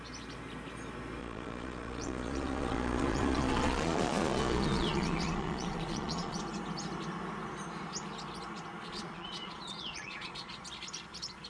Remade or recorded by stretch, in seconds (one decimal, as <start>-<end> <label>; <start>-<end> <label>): 0.0-1.2 recorded; 1.2-6.4 remade; 6.4-8.8 recorded; 8.8-10.6 remade; 10.6-11.5 recorded